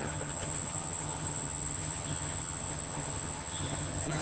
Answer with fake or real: fake